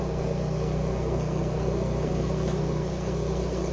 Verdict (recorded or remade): remade